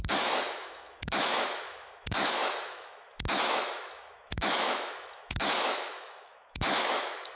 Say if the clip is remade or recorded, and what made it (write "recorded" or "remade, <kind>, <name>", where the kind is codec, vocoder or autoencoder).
remade, autoencoder, DAC-VAE